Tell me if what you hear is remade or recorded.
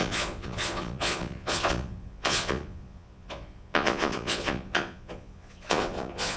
remade